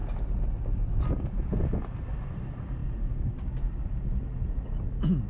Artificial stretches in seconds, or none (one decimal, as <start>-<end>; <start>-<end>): none